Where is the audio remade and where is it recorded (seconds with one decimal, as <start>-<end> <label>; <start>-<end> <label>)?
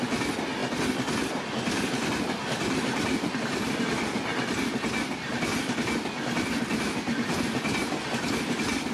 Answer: 0.0-8.9 recorded